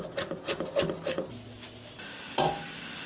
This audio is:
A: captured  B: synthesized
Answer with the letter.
A